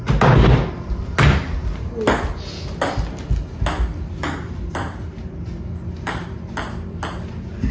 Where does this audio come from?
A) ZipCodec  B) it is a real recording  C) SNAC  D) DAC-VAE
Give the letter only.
B